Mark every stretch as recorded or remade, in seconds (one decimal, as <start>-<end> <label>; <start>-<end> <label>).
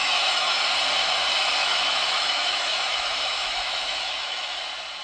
0.0-0.6 remade; 0.6-1.6 recorded; 1.6-4.6 remade; 4.6-5.0 recorded